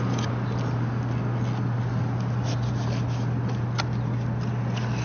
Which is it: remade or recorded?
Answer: recorded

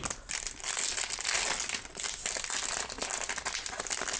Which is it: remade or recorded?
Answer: recorded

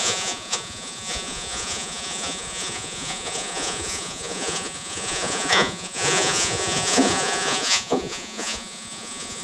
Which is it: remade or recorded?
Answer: remade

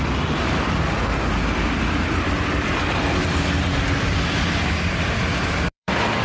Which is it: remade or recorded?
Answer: remade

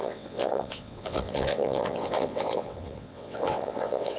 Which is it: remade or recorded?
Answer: remade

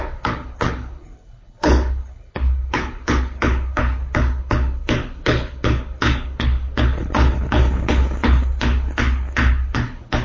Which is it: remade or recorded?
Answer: remade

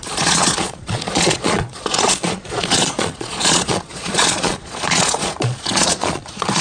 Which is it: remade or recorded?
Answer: remade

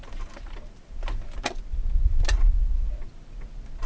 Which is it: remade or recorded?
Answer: recorded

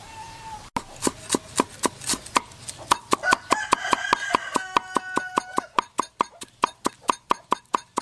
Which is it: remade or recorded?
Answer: recorded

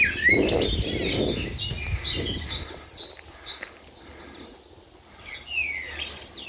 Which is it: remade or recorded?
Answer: recorded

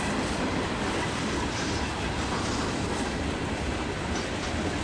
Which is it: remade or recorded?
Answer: recorded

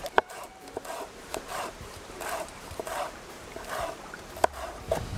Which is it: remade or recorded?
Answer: remade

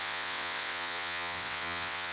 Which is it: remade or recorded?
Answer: remade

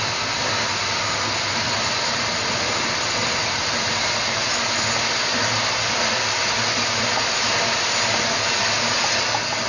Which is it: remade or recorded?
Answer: recorded